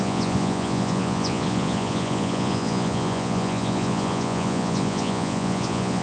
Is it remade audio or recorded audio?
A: remade